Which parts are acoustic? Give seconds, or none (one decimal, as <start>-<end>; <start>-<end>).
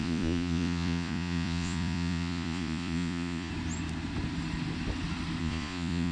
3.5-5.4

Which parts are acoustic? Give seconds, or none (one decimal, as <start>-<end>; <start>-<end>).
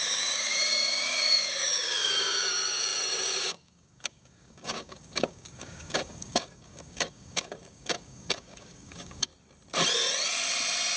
9.3-11.0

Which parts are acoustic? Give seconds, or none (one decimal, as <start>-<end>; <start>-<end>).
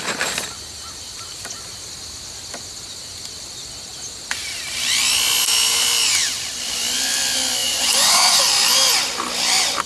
0.0-7.6; 8.4-9.9